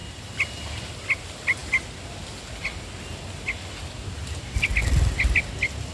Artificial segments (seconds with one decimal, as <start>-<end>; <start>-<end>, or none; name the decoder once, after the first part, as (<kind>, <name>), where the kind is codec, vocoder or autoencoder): none

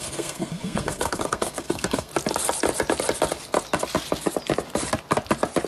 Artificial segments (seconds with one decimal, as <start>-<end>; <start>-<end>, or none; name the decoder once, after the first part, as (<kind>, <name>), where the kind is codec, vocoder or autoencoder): 0.0-2.1 (codec, SNAC)

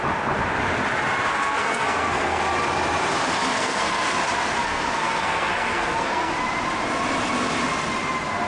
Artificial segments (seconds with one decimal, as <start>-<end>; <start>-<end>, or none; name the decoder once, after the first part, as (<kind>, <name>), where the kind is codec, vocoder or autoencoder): 1.3-2.4 (codec, SNAC); 3.5-4.1; 4.6-6.3